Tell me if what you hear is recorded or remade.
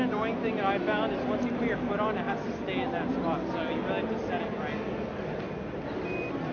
recorded